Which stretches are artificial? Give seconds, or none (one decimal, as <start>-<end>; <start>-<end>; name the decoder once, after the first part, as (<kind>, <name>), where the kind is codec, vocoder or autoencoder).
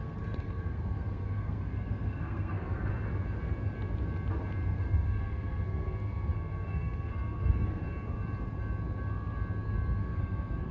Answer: 0.0-2.9 (codec, SNAC); 4.8-7.8; 10.0-10.7